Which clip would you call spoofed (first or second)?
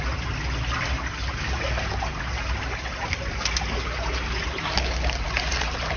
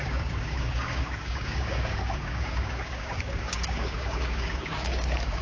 second